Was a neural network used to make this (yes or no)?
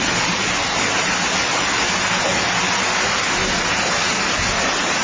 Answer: no